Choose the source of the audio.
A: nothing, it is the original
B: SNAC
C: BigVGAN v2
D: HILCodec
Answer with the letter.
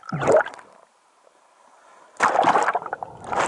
A